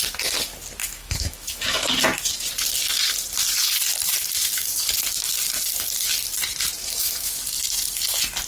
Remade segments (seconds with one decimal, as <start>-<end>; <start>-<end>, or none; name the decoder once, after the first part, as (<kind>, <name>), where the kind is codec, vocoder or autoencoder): 0.8-1.9 (autoencoder, DAC-VAE); 6.8-7.4